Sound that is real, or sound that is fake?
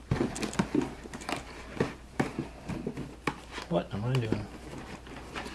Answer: real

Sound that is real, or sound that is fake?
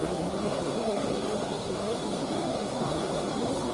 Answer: fake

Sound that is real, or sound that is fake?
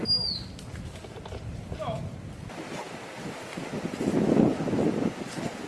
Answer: real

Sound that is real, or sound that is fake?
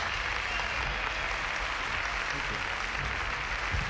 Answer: real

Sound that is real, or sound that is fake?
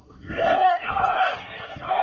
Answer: fake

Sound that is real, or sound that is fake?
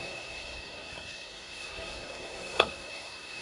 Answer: fake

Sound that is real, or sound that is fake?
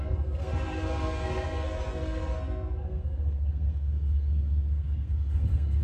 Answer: fake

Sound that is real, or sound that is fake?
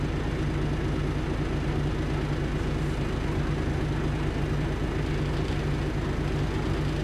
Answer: real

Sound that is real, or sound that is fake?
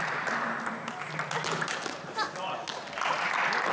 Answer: real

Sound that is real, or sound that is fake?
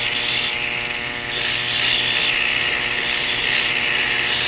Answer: real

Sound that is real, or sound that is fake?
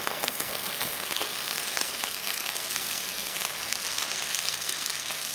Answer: fake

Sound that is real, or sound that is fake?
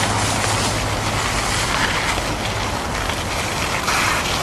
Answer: real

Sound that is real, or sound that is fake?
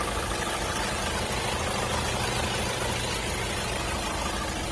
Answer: real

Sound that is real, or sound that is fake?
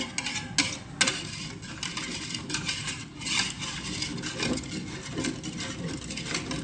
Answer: real